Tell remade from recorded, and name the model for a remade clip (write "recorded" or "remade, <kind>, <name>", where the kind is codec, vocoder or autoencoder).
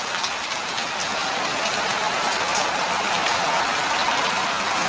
recorded